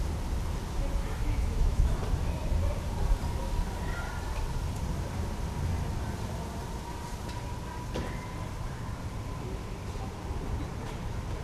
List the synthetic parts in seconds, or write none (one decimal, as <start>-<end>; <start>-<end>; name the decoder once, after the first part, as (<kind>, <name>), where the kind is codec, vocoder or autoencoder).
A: 1.2-2.0 (autoencoder, DAC-VAE)